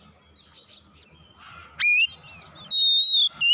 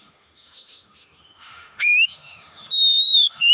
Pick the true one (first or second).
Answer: first